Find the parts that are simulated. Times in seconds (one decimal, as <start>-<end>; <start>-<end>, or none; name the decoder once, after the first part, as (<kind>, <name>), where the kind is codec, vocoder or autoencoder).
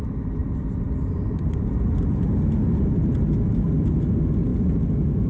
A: 0.4-3.6 (vocoder, BigVGAN v2); 4.5-5.3